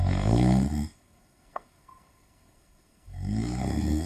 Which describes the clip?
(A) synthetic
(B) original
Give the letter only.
A